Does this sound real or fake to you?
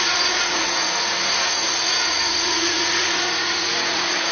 fake